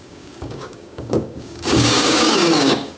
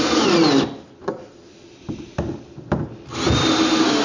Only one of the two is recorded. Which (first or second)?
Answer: second